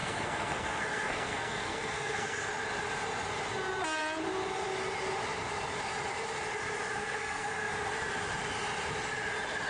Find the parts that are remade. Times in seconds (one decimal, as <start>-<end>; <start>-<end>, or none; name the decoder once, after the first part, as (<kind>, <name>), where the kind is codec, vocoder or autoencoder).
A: 0.0-2.5 (codec, SNAC); 7.0-7.7